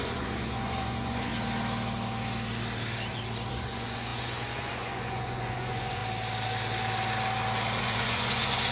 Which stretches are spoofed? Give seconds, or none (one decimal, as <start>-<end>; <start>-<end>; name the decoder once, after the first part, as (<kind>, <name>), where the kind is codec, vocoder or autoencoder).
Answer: 0.0-1.3 (vocoder, Vocos); 3.5-6.0; 7.8-8.7